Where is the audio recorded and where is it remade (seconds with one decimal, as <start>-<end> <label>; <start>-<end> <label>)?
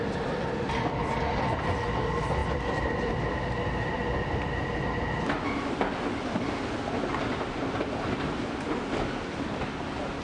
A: 0.0-10.2 recorded